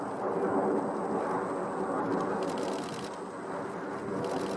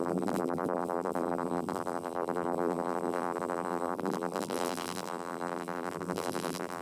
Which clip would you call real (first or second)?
first